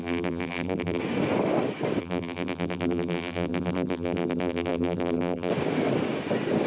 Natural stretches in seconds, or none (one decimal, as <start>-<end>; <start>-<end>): 1.0-2.0; 5.5-6.7